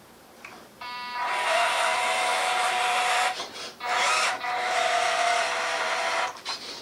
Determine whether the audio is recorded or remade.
remade